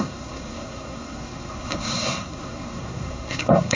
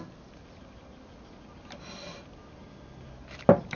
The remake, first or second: first